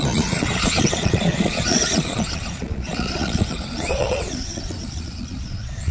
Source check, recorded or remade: remade